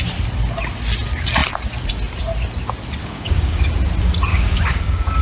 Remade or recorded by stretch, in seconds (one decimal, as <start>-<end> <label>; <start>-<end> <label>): 0.0-3.0 recorded; 3.0-3.6 remade; 3.6-4.3 recorded; 4.3-5.2 remade